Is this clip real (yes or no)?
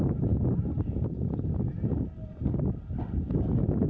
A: yes